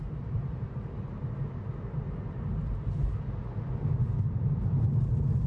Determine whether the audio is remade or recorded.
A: remade